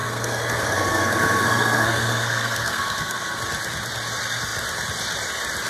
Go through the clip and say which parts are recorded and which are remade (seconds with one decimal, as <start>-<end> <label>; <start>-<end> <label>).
0.0-3.4 remade; 3.4-5.7 recorded